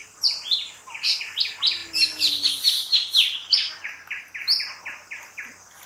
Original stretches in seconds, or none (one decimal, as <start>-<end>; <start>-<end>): 1.4-3.4; 4.2-5.9